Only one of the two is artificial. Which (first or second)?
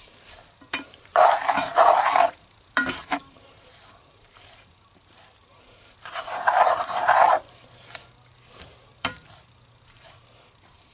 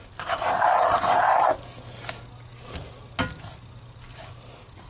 first